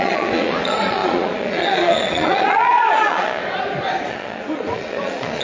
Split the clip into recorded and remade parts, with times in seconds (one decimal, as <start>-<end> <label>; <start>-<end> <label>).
0.0-3.4 remade; 3.4-4.1 recorded; 4.1-5.4 remade